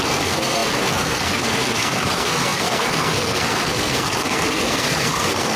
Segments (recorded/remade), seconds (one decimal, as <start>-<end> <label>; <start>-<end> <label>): 0.0-5.6 remade